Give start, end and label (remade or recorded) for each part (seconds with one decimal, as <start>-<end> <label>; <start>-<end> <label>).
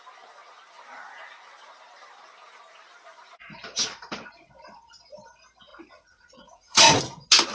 0.0-5.7 recorded; 5.7-7.0 remade; 7.0-7.5 recorded